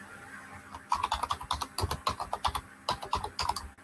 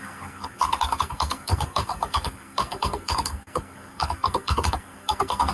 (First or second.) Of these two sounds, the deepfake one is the second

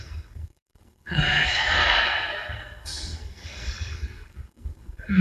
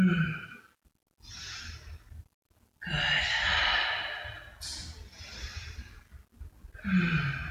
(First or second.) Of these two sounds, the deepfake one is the first